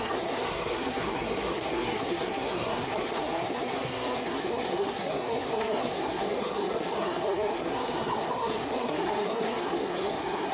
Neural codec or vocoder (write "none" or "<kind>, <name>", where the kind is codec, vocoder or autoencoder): codec, SNAC